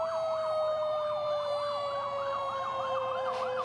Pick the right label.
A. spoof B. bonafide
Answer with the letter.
A